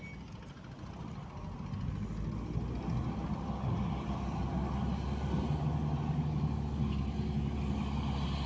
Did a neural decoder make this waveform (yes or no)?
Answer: no